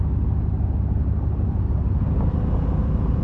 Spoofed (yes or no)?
no